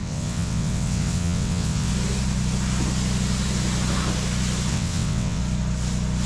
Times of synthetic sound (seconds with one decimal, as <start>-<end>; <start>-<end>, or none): 0.0-1.9; 4.7-5.4